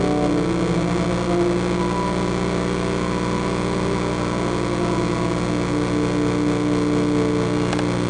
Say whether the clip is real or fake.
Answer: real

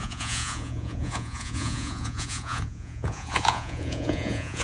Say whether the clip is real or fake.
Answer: fake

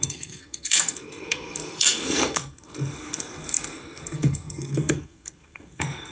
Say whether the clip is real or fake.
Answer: fake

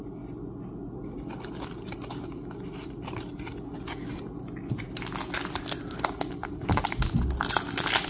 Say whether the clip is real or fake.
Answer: real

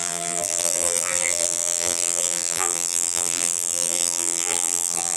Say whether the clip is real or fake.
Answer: fake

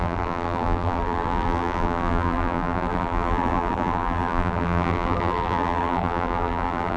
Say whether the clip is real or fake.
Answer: fake